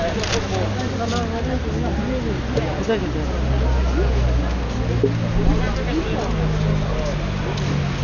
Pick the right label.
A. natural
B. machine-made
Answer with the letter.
A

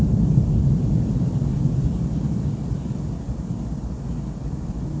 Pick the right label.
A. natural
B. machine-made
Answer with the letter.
A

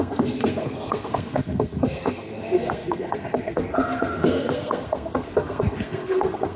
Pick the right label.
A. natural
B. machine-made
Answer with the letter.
B